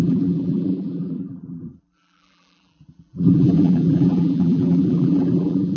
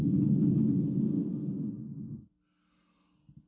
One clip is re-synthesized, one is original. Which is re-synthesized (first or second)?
first